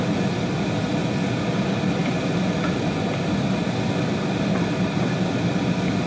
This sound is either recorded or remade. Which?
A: recorded